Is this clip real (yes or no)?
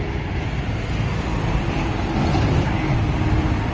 yes